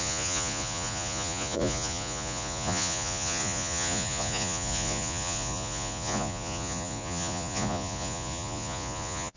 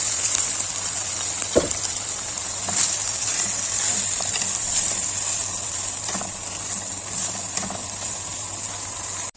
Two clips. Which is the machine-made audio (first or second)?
first